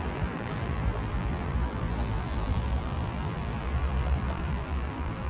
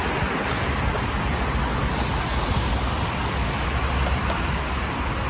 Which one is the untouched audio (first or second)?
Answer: second